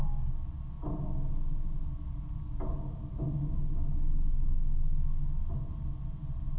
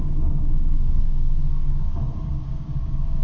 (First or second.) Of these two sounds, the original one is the first